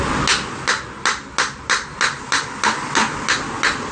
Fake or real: real